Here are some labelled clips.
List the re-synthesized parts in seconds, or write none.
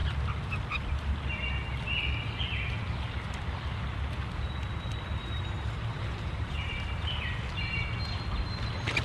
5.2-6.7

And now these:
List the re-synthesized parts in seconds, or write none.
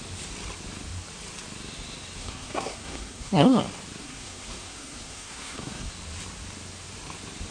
2.2-3.6; 4.0-5.9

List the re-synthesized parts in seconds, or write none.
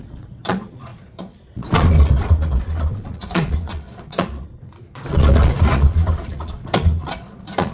0.0-7.7